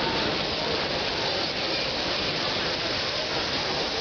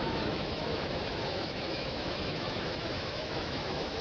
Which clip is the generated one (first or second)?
second